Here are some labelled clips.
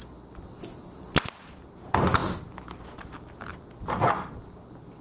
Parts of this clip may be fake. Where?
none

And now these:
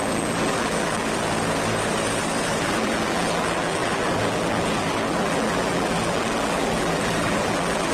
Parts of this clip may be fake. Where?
0.0-1.0 (vocoder, BigVGAN v2); 2.6-7.9